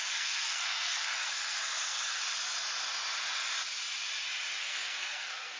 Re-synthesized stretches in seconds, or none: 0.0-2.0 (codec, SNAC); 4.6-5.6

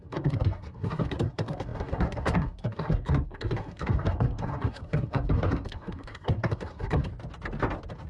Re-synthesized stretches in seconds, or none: 0.0-7.1 (codec, SNAC)

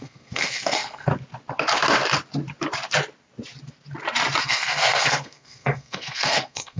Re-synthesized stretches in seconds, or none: 0.0-1.1 (codec, SNAC); 4.4-6.8

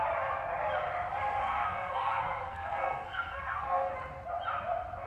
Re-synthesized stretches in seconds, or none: 1.4-3.9 (codec, SNAC)

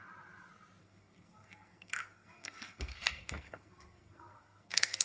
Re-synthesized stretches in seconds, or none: 0.8-5.0 (codec, SNAC)

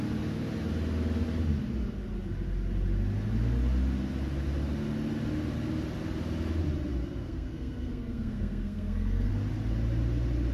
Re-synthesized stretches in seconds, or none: 7.2-9.3 (codec, SNAC)